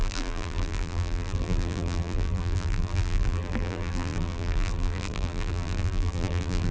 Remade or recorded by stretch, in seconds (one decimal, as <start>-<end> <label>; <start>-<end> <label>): 0.0-6.7 remade